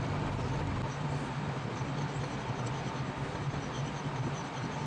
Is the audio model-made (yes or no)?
no